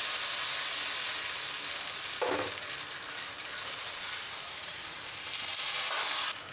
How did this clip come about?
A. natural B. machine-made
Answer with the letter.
A